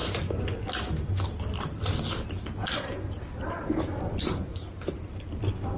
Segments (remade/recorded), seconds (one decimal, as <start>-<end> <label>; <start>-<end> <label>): 0.0-5.8 recorded